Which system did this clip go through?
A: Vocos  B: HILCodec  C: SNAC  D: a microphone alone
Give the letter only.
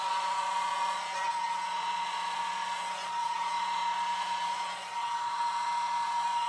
A